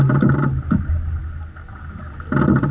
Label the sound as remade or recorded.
recorded